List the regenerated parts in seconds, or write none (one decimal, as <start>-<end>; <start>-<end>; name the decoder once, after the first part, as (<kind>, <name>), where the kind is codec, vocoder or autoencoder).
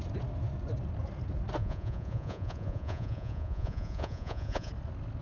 1.6-4.7 (vocoder, Vocos)